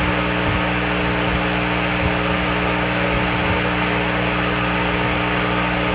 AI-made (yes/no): no